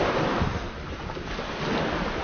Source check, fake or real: real